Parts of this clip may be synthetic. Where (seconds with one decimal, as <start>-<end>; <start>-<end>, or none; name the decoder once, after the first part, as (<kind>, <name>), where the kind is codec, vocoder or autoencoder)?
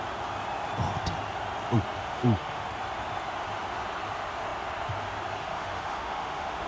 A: 2.0-2.7 (autoencoder, DAC-VAE); 5.4-6.7